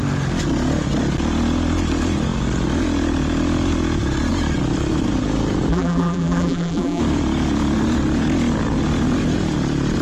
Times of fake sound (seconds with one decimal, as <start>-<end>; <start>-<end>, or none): 5.7-7.0